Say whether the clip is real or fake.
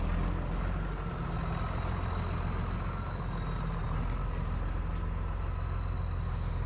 real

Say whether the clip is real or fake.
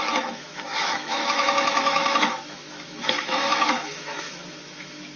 fake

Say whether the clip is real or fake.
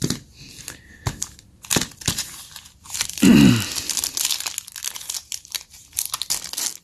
real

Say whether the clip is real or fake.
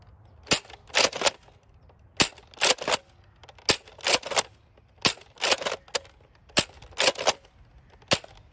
real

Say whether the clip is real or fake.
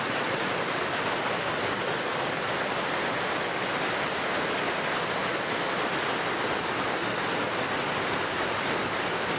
real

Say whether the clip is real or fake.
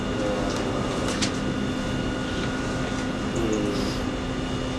real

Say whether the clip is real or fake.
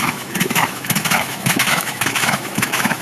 fake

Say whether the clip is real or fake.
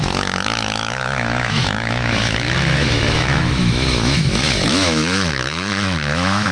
fake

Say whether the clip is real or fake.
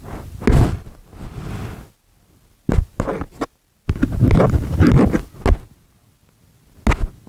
real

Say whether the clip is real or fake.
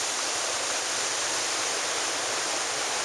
real